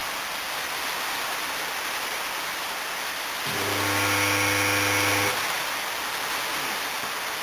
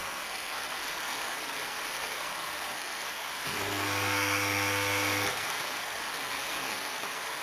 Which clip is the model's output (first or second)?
second